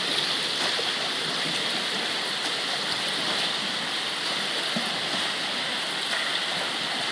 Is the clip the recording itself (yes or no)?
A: yes